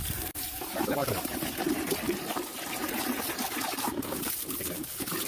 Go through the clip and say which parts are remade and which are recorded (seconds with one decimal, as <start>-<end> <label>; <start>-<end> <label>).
0.0-5.3 remade